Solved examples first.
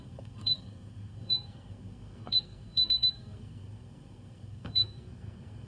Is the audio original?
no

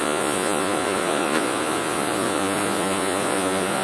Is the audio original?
no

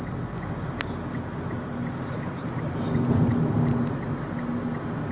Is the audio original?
yes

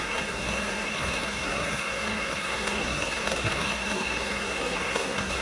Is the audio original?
no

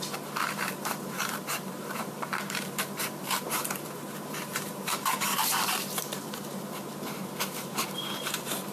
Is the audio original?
no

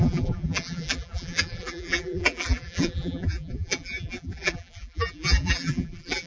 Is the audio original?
no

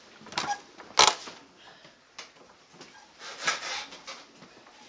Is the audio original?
yes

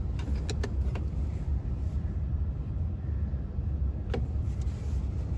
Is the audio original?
yes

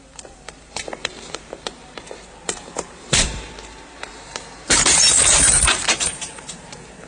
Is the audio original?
no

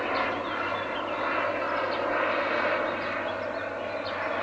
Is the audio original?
yes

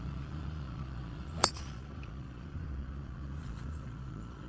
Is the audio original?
no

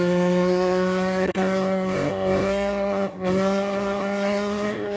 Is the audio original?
no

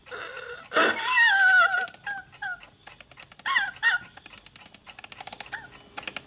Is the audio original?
yes